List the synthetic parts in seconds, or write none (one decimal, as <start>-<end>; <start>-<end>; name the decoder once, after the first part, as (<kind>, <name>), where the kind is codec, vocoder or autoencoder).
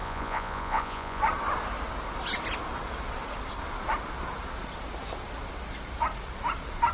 0.0-1.2 (vocoder, Vocos)